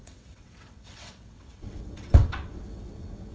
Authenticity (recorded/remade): remade